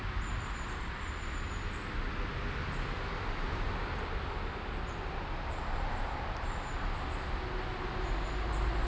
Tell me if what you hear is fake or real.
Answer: real